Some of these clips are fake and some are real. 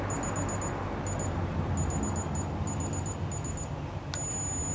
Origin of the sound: real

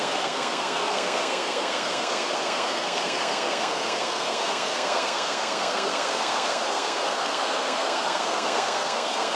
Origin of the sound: fake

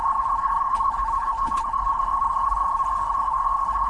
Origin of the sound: fake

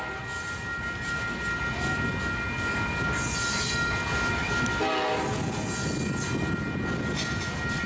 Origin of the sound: real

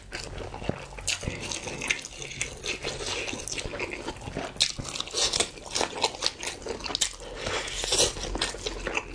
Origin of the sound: real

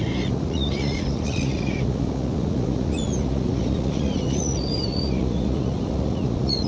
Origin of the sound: fake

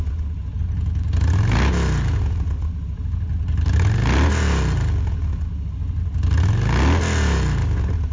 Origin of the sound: real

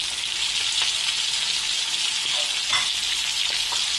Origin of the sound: real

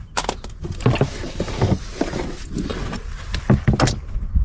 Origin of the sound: real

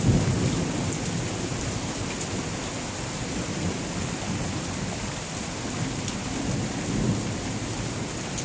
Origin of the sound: real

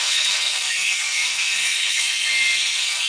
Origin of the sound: fake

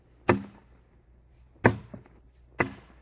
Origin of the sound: real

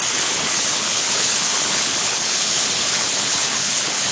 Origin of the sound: fake